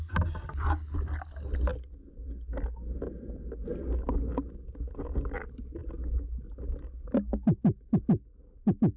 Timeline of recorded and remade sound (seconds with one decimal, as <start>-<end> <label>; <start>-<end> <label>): 0.0-9.0 recorded